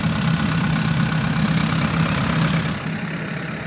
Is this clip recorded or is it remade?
recorded